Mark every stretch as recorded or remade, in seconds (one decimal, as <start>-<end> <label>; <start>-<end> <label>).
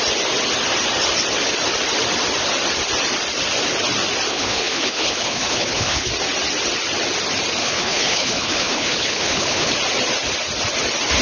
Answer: 0.0-4.3 recorded; 4.3-6.1 remade; 6.1-7.6 recorded; 7.6-9.7 remade; 9.7-11.2 recorded